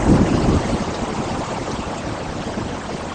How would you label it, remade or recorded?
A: recorded